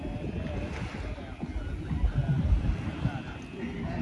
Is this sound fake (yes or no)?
no